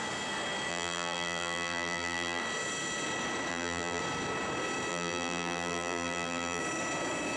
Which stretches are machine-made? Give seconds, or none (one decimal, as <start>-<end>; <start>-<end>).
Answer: 0.7-2.4; 3.5-4.0; 4.9-6.6